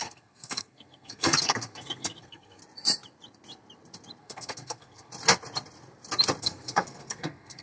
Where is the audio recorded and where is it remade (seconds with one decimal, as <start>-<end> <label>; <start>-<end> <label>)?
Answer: 0.0-2.6 remade; 2.6-4.2 recorded; 4.2-5.1 remade; 5.1-6.4 recorded; 6.4-7.6 remade